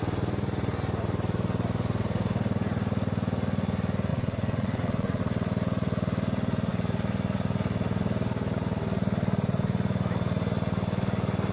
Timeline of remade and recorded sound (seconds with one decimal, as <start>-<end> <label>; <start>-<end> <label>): 0.0-4.1 recorded; 4.1-5.2 remade; 5.2-11.5 recorded